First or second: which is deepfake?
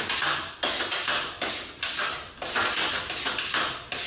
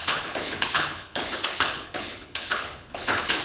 second